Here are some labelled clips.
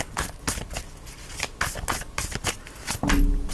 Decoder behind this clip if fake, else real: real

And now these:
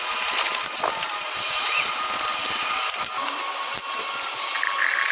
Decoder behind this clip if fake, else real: real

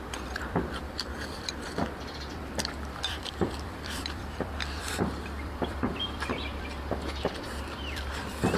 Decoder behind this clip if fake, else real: fake, vocoder, BigVGAN v2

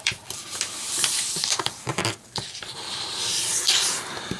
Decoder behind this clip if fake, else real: fake, vocoder, BigVGAN v2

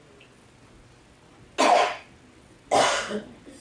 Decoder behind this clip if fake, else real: real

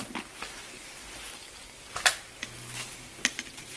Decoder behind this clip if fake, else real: real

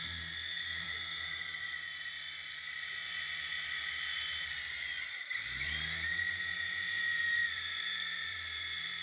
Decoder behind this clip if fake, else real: fake, vocoder, BigVGAN v2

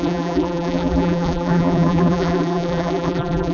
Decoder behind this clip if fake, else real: fake, vocoder, BigVGAN v2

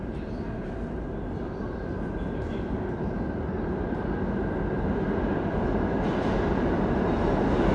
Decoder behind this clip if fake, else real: real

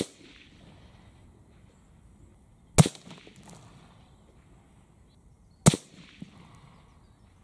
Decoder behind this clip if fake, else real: real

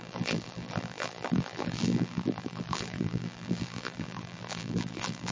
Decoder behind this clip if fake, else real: fake, vocoder, BigVGAN v2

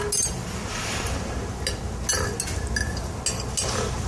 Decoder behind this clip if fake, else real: real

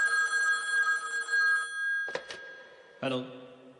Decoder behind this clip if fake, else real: real